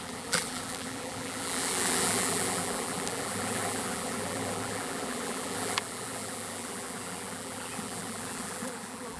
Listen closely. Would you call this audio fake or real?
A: fake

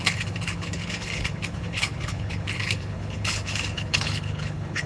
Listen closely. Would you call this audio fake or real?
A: fake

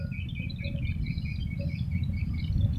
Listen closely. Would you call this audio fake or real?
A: real